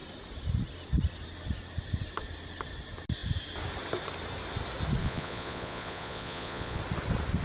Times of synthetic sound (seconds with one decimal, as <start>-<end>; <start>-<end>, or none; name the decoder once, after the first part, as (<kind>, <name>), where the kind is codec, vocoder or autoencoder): 5.0-6.8 (vocoder, Vocos)